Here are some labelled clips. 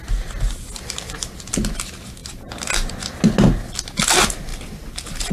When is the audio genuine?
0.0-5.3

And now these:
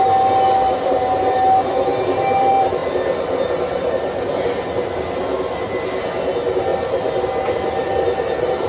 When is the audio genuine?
0.0-8.7

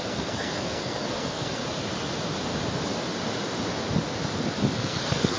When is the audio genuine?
1.6-4.7

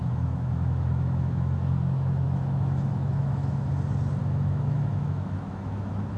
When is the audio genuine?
3.7-4.2